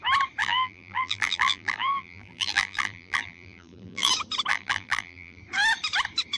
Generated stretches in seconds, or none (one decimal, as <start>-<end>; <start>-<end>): 0.4-4.1; 4.5-5.4